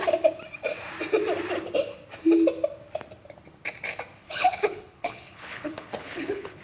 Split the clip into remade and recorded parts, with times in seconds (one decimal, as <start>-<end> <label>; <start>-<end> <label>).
0.0-4.2 recorded; 4.2-6.6 remade

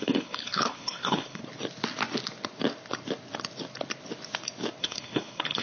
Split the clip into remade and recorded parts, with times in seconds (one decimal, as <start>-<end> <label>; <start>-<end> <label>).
0.0-1.4 remade; 1.4-4.8 recorded; 4.8-5.6 remade